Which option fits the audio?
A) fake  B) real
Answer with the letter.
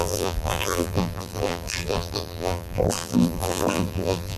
A